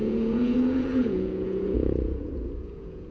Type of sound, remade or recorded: remade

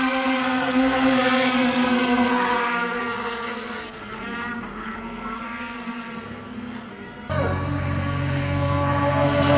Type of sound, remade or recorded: remade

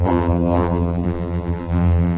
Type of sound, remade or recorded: remade